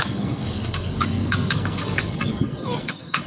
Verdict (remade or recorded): remade